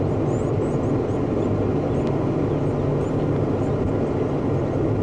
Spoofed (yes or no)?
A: no